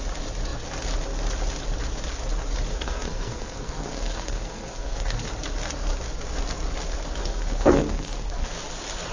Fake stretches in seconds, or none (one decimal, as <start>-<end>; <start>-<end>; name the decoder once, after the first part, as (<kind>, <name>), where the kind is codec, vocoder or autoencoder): 2.7-5.3 (codec, SNAC); 7.2-8.5

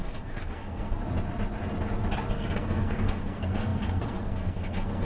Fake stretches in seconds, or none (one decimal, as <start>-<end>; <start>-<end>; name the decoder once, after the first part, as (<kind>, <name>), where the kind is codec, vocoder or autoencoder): 0.0-1.0 (codec, SNAC); 2.3-5.0